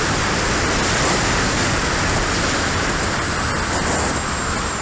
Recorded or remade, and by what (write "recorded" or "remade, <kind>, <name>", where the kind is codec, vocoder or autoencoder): recorded